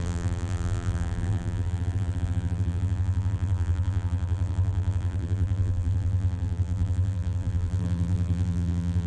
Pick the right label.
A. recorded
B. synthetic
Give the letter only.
B